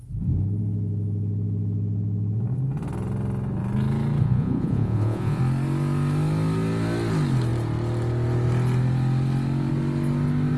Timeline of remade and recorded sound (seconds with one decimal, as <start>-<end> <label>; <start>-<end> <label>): 0.0-4.2 recorded; 4.2-5.4 remade; 5.4-10.6 recorded